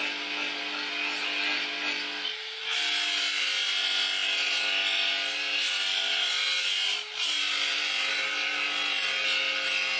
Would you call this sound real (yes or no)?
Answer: yes